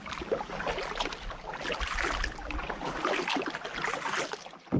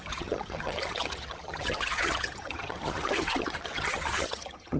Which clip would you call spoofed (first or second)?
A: second